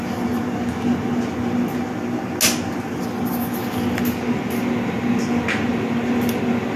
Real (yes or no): yes